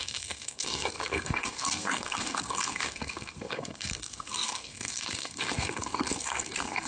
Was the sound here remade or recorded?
remade